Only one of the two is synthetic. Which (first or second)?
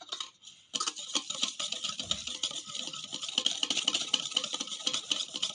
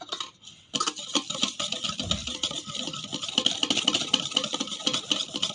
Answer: first